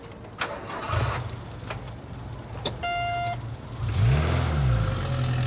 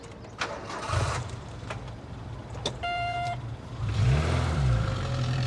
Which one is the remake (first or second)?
second